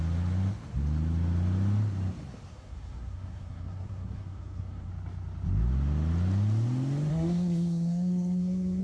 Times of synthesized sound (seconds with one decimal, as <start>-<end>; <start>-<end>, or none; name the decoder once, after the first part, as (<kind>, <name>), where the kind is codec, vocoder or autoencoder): 2.5-4.9 (codec, SNAC); 7.1-8.8